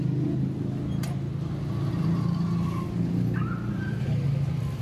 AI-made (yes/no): no